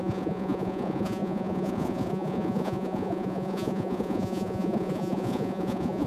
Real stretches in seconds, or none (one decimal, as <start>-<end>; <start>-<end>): none